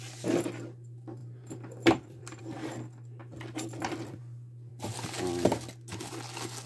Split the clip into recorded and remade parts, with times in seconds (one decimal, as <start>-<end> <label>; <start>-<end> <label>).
0.0-1.2 recorded; 1.2-2.4 remade; 2.4-3.2 recorded; 3.2-4.2 remade; 4.2-6.7 recorded